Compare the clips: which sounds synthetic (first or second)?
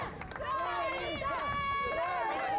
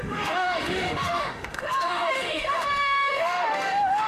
second